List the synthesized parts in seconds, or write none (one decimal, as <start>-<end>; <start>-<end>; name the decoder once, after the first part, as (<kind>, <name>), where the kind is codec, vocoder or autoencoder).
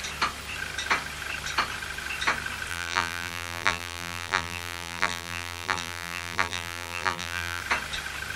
2.7-7.6 (vocoder, BigVGAN v2)